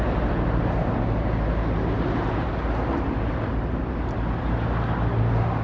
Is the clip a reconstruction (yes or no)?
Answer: no